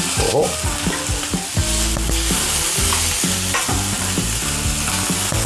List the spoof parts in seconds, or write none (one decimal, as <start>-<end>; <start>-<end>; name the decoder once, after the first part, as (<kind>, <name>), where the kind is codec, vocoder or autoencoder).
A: none